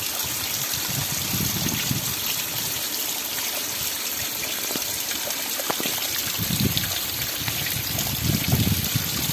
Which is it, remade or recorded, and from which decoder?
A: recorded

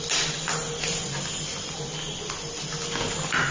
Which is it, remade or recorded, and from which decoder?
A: recorded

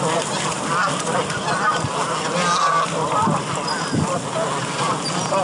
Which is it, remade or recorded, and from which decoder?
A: recorded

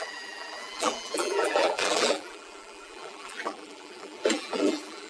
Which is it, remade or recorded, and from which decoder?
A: remade, vocoder, BigVGAN v2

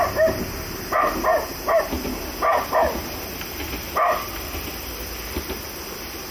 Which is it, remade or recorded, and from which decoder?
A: recorded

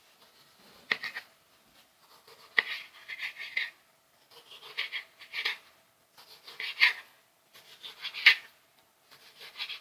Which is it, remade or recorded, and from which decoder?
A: recorded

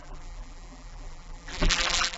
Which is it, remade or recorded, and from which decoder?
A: remade, vocoder, BigVGAN v2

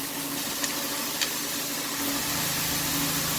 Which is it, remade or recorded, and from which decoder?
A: recorded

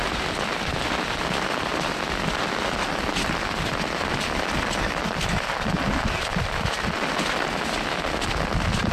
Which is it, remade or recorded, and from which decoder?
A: recorded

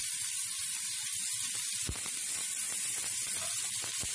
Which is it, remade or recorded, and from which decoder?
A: remade, vocoder, BigVGAN v2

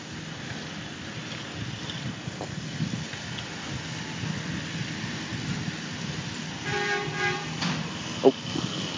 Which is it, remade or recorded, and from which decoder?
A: recorded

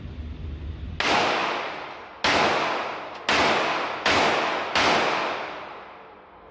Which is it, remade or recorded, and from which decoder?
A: recorded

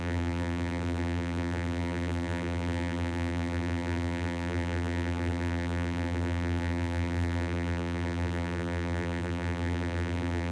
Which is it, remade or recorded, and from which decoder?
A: remade, vocoder, BigVGAN v2